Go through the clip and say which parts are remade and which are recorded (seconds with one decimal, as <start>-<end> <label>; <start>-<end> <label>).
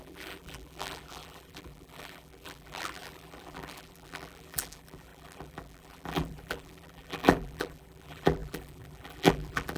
0.0-9.8 remade